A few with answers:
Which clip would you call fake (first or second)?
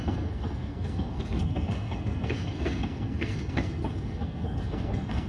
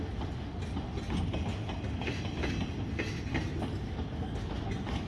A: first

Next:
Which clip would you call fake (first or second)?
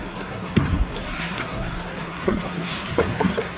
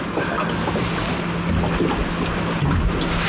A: first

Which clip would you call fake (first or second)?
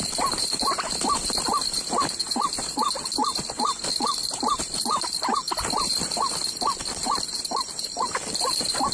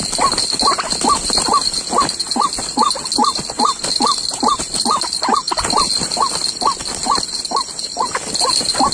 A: first